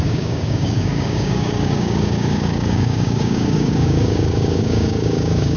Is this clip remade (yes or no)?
yes